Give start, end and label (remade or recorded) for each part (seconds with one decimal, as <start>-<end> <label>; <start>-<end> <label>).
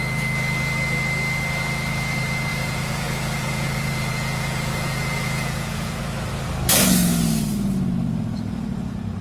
0.0-2.5 recorded; 2.5-6.0 remade; 6.0-9.2 recorded